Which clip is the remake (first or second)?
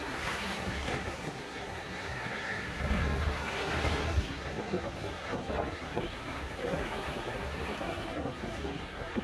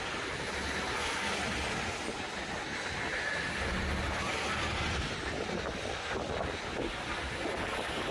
first